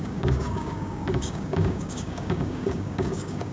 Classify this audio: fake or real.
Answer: fake